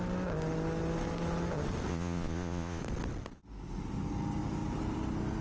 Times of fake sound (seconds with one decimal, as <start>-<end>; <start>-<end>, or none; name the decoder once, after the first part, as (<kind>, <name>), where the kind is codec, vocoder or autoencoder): 1.9-2.8 (vocoder, Vocos)